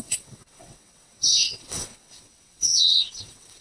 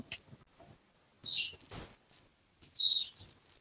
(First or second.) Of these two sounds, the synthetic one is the first